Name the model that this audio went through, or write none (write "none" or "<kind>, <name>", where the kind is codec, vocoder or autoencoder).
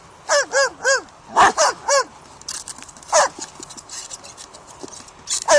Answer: none